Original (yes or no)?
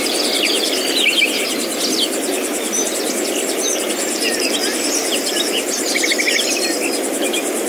yes